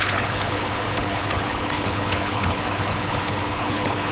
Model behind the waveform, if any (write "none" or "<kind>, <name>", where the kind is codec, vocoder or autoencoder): codec, HILCodec